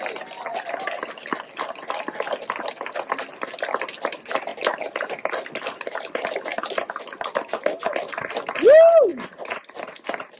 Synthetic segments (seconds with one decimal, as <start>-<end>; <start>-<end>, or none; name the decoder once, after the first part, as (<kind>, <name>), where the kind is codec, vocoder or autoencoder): 4.5-6.1 (vocoder, BigVGAN v2); 6.5-8.2